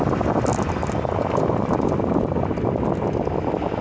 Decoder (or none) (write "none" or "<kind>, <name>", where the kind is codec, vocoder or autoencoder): none